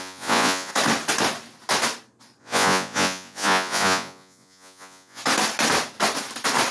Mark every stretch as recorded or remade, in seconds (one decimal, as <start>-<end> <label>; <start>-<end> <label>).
0.0-0.7 remade; 0.7-2.4 recorded; 2.4-5.2 remade; 5.2-6.7 recorded

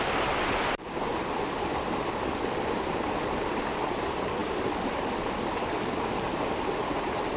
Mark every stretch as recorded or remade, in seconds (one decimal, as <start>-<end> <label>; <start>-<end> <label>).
0.0-7.4 recorded

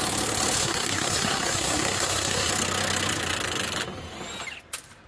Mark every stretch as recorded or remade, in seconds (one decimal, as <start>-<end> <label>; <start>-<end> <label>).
0.0-0.6 recorded; 0.6-2.5 remade; 2.5-5.1 recorded

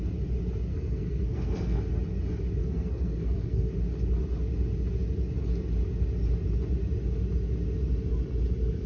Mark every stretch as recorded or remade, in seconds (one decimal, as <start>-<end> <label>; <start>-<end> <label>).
0.0-0.7 recorded; 0.7-1.8 remade; 1.8-2.6 recorded; 2.6-3.7 remade; 3.7-8.9 recorded

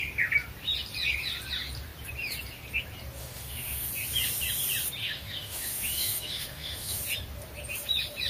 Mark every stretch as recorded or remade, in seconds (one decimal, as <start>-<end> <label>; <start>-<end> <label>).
0.0-3.2 recorded; 3.2-3.9 remade; 3.9-5.0 recorded; 5.0-7.0 remade; 7.0-8.3 recorded